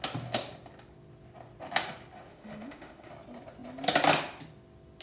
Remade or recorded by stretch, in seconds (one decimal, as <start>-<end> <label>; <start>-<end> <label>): 0.0-2.3 recorded; 2.3-3.1 remade; 3.1-5.0 recorded